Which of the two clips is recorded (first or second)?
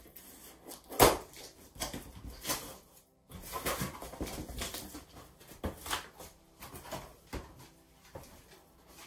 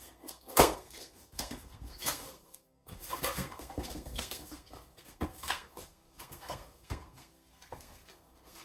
first